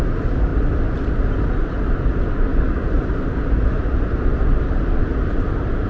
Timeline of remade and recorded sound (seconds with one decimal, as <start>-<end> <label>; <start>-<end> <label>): 0.0-5.9 remade